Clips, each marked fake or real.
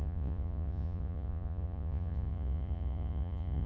fake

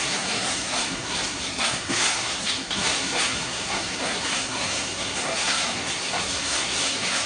fake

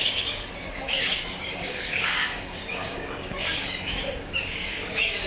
fake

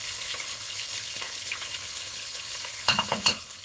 fake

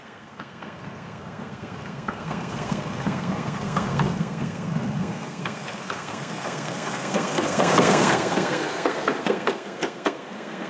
fake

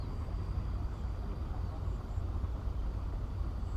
real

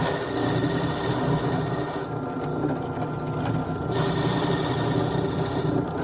real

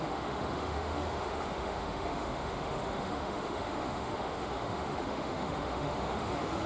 fake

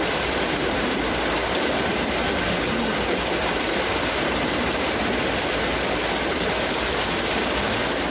real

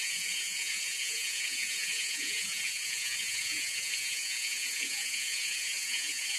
fake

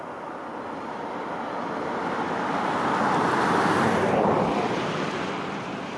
real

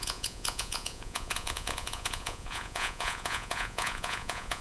fake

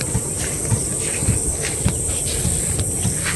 real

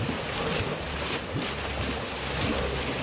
real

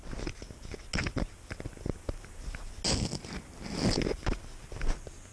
real